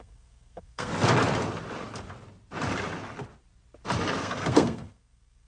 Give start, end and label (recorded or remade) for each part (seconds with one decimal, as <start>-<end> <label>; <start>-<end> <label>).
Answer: 0.0-0.9 remade; 0.9-4.2 recorded; 4.2-5.5 remade